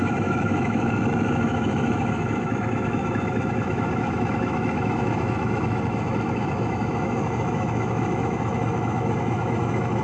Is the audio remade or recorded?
remade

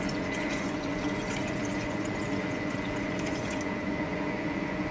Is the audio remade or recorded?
remade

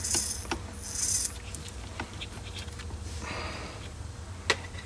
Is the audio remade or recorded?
recorded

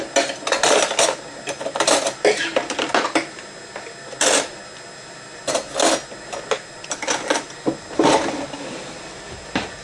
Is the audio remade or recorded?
recorded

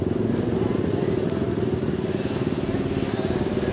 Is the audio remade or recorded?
recorded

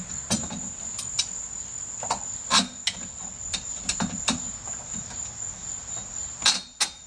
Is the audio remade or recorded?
recorded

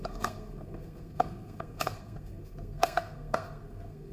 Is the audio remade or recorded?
remade